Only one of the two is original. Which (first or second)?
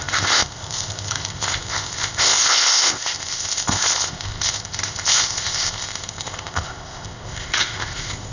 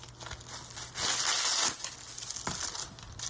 second